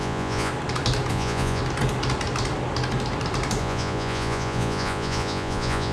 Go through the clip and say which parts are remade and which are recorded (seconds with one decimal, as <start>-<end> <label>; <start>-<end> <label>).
0.0-0.5 remade; 0.5-1.1 recorded; 1.1-1.6 remade; 1.6-3.6 recorded; 3.6-5.9 remade